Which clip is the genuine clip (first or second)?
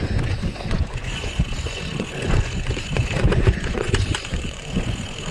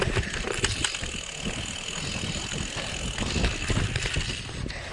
second